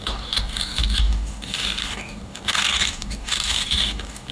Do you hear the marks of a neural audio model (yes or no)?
yes